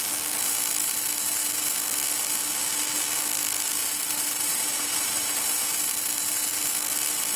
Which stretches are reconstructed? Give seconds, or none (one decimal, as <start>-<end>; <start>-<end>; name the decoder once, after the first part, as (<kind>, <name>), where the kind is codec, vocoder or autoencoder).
3.8-5.8 (vocoder, BigVGAN v2)